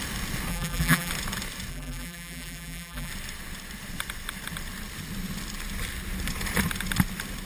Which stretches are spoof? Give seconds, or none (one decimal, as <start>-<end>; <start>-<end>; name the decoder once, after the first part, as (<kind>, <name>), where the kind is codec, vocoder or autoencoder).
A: 0.5-1.1 (vocoder, BigVGAN v2); 1.7-3.1